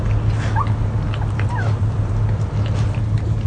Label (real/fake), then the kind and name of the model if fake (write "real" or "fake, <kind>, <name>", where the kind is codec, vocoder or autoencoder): real